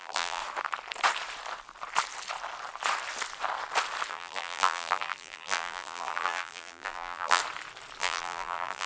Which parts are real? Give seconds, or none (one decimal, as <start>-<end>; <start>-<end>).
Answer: 0.4-4.1; 7.4-8.0